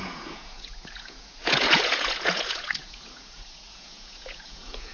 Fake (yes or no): yes